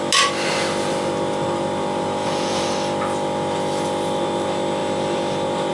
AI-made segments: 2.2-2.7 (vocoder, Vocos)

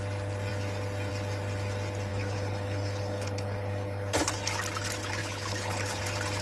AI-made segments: 2.1-4.2 (codec, HILCodec); 5.2-6.0

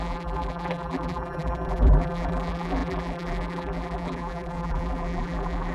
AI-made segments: 0.0-5.7 (vocoder, BigVGAN v2)